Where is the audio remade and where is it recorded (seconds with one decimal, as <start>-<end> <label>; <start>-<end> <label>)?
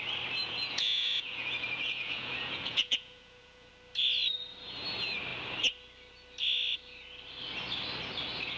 0.0-0.4 recorded; 0.4-3.7 remade; 3.7-8.6 recorded